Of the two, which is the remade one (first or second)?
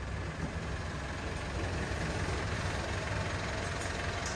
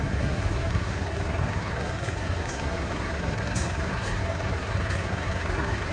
second